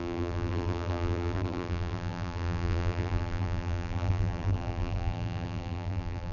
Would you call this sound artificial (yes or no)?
yes